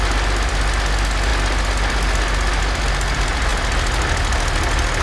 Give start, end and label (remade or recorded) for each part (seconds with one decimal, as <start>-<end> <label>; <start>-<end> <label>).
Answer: 0.0-5.0 recorded